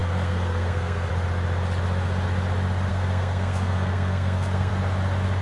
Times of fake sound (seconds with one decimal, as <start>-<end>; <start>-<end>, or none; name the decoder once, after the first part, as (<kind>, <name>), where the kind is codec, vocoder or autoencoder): 0.0-1.1 (codec, SNAC); 2.9-4.7